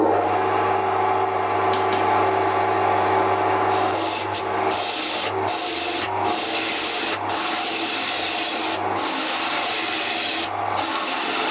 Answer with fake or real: real